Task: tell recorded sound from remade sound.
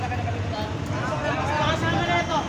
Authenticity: recorded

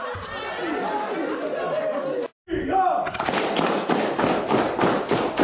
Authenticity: recorded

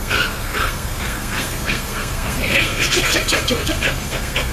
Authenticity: remade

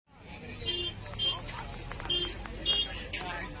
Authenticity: recorded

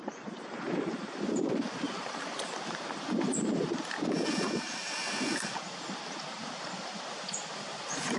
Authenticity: recorded